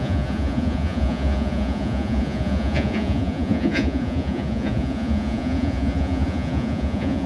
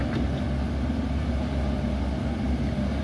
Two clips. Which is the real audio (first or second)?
second